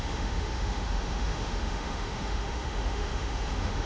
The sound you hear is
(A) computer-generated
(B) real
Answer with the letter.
A